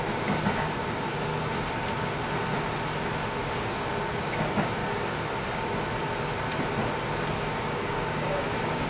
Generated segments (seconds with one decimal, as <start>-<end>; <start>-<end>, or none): 0.0-1.3; 3.4-4.8; 7.3-8.9